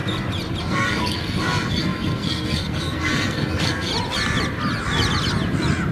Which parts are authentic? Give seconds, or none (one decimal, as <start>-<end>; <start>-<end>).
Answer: 0.0-0.6; 3.9-5.9